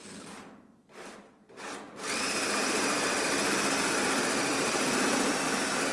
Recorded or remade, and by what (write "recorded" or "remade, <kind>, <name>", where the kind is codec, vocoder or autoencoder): remade, vocoder, BigVGAN v2